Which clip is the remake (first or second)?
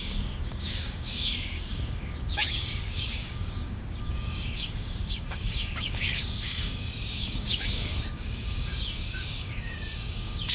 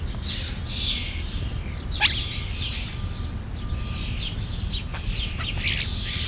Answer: first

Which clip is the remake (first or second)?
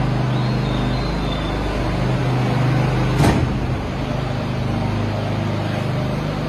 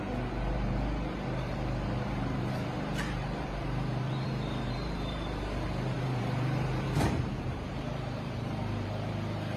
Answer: second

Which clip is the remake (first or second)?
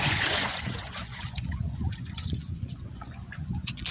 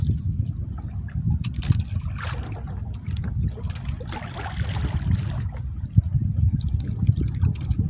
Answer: first